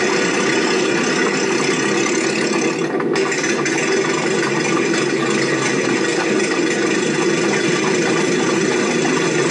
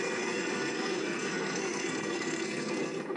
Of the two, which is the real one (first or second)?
first